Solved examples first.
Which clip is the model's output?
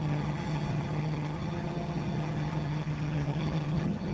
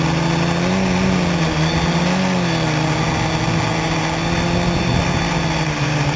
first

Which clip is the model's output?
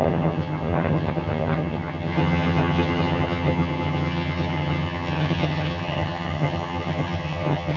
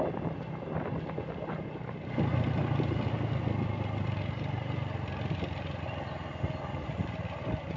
first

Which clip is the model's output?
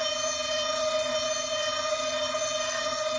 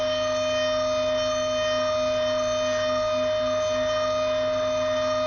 first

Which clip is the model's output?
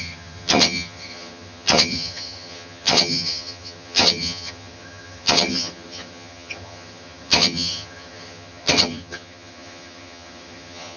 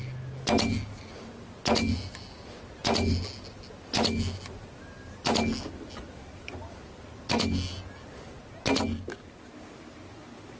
first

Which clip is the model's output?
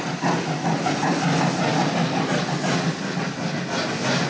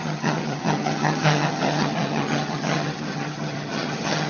second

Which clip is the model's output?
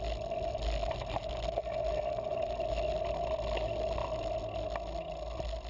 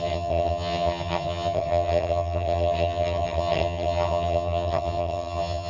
second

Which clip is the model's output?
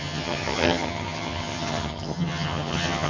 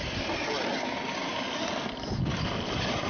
first